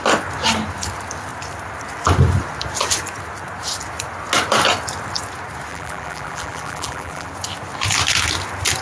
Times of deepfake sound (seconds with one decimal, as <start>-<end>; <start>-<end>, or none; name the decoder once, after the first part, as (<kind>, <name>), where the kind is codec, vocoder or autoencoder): 5.7-7.3 (vocoder, BigVGAN v2)